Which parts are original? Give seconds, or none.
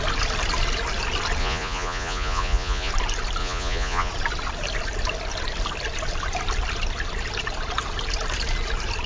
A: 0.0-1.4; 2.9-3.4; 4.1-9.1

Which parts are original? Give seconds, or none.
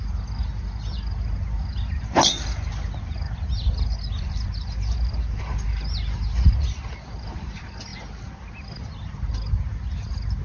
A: 0.0-10.4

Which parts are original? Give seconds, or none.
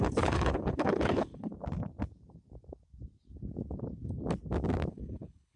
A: 1.5-4.9